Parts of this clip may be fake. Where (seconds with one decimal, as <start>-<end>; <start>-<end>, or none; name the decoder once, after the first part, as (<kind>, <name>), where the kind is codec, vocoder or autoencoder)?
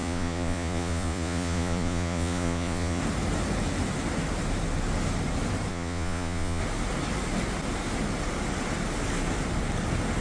0.0-3.0 (vocoder, Vocos); 5.7-6.6